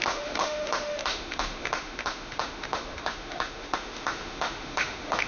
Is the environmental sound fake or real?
fake